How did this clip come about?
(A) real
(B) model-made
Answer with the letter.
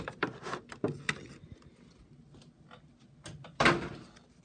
A